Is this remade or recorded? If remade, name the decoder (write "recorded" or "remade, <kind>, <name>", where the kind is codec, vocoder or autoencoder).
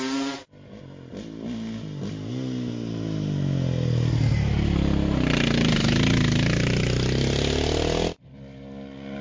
recorded